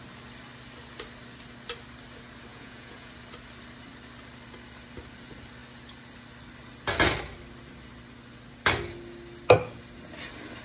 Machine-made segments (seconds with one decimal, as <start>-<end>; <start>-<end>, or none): 2.5-3.1